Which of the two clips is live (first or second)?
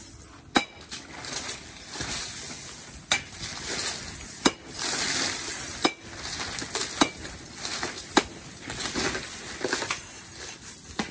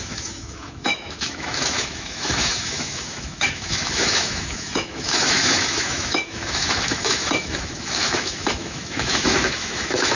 first